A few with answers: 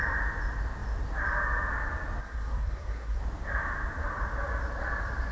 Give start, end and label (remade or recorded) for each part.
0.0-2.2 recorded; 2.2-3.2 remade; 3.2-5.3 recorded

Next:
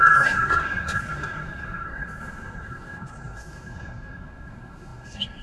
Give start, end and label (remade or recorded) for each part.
0.0-5.4 remade